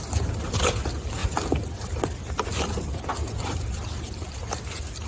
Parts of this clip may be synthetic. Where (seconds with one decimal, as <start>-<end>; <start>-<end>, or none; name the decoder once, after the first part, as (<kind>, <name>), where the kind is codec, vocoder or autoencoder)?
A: none